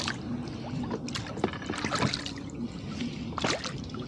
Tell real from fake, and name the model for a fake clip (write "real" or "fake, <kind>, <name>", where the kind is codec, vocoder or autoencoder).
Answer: real